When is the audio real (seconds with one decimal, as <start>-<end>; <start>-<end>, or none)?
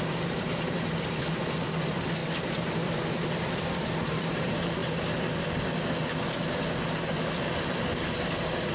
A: 1.3-1.8; 4.8-7.3